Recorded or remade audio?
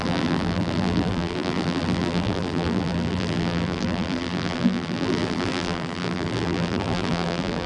remade